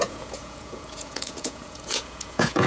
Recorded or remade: remade